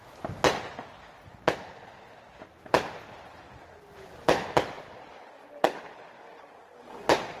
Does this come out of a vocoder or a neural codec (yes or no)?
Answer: no